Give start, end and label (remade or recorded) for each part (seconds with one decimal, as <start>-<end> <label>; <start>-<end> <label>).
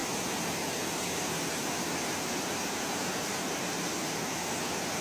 0.0-5.0 recorded